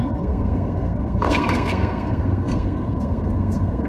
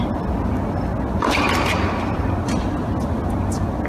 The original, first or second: second